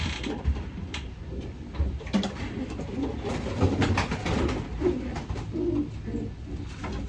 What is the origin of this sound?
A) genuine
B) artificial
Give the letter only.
A